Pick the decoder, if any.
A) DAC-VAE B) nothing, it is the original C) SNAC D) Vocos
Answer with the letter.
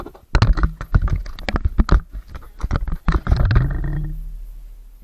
B